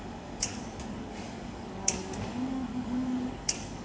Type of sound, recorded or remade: remade